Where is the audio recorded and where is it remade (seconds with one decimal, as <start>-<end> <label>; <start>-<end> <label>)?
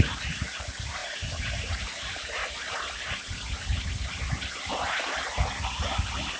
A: 0.0-2.4 remade; 2.4-6.4 recorded